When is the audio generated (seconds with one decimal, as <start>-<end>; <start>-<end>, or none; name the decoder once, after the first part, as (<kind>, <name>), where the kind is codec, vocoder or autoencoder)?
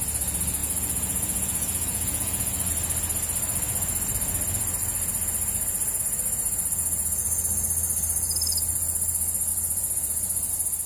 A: 0.6-2.7 (vocoder, Vocos); 6.8-7.4; 9.5-10.5